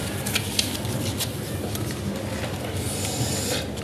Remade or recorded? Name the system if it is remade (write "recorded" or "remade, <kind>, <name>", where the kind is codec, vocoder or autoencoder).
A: recorded